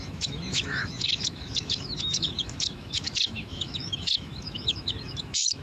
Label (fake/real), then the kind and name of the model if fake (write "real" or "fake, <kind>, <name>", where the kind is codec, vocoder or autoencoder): fake, autoencoder, DAC-VAE